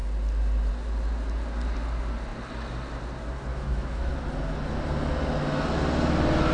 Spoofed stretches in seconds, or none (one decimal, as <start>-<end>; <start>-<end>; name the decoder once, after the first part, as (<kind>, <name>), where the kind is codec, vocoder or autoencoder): 3.5-4.1 (autoencoder, DAC-VAE)